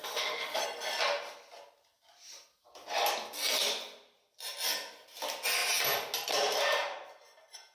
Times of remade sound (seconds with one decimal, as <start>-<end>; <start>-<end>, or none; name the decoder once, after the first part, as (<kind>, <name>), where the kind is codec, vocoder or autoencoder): 0.0-0.6 (autoencoder, DAC-VAE)